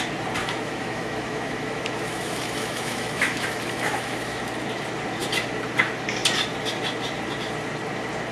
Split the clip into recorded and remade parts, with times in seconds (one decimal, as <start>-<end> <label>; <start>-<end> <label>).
0.0-0.4 recorded; 0.4-4.4 remade; 4.4-8.3 recorded